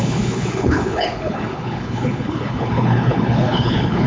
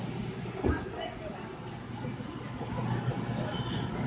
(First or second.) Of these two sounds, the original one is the second